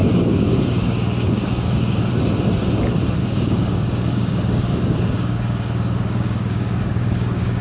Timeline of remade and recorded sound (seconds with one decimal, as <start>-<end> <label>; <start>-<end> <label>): 0.0-2.1 remade; 2.1-3.2 recorded; 3.2-7.6 remade